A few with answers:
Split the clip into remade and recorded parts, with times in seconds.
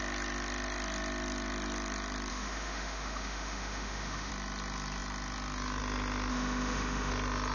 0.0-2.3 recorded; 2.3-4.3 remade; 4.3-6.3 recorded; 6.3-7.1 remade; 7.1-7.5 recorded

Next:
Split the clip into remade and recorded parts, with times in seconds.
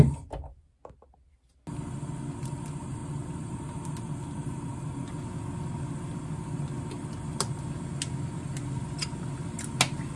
0.0-10.2 recorded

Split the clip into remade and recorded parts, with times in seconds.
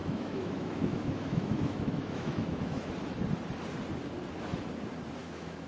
0.0-2.9 remade; 2.9-5.2 recorded; 5.2-5.7 remade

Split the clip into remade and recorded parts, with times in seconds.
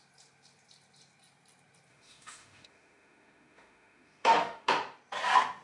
0.0-1.9 recorded; 1.9-4.7 remade; 4.7-5.6 recorded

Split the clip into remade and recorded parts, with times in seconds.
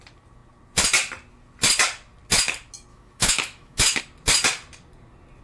0.0-2.9 recorded; 2.9-4.0 remade; 4.0-5.4 recorded